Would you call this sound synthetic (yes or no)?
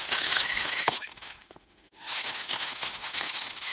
yes